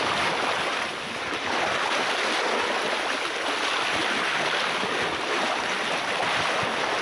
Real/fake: real